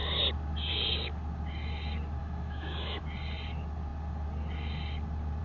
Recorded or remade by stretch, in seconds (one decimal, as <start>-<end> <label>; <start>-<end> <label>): 0.0-2.2 recorded; 2.2-3.0 remade; 3.0-5.4 recorded